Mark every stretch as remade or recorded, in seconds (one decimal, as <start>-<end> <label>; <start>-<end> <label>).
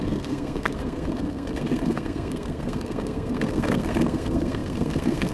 0.0-5.3 remade